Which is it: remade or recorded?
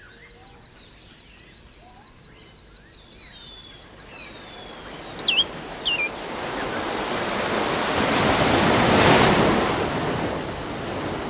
recorded